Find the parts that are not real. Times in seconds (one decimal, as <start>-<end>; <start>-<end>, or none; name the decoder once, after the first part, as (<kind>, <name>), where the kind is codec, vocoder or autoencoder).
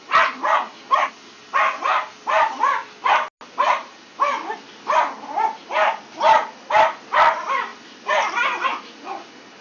none